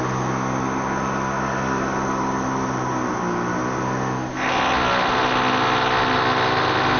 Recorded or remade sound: recorded